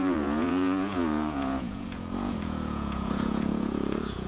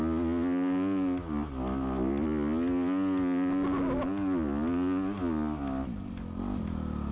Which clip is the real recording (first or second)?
second